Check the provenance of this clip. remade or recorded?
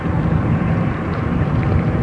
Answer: recorded